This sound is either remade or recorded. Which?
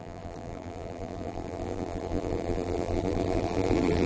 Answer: remade